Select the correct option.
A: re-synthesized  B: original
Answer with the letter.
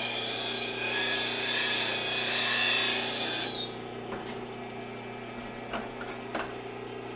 B